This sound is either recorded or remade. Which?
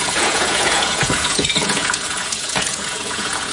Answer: remade